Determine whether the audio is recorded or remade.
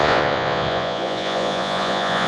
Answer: remade